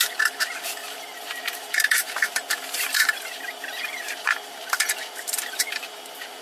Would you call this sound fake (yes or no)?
yes